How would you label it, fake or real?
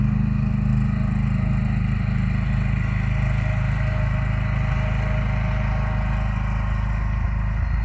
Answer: real